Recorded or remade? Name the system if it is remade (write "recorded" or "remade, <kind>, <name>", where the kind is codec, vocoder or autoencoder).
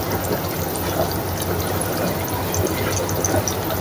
recorded